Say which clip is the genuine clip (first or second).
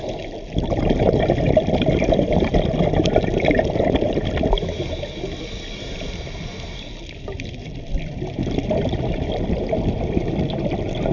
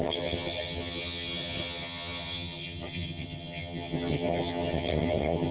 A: first